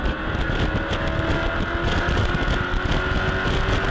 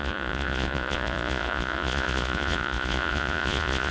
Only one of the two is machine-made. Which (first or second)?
second